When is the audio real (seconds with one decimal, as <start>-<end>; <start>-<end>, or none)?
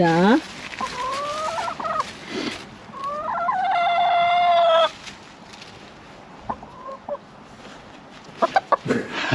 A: 0.0-9.3